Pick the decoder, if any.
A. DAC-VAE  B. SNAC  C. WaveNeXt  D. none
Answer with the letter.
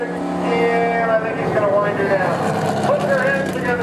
D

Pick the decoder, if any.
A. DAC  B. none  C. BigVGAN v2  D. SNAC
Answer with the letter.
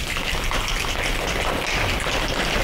B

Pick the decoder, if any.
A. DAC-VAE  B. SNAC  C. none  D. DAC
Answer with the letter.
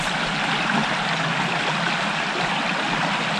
C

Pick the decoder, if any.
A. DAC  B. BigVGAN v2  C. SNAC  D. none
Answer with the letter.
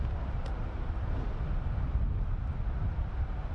D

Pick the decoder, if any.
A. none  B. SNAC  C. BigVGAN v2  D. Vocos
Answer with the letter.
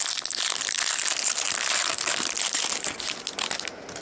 A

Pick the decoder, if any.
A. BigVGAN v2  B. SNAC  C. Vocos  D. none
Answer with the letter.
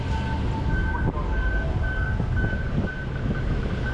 D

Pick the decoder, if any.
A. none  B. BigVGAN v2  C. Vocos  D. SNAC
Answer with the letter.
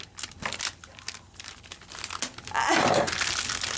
A